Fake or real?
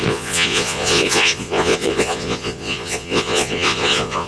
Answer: fake